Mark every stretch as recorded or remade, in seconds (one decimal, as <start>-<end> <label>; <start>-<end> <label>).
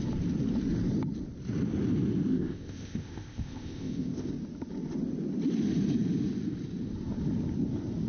0.0-2.3 recorded; 2.3-4.3 remade; 4.3-8.1 recorded